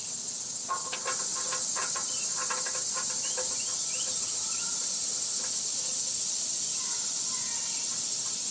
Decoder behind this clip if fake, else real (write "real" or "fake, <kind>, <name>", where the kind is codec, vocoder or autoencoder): real